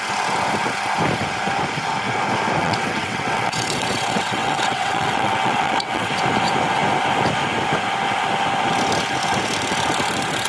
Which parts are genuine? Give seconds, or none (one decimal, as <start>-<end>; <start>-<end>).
0.0-2.6; 6.1-10.5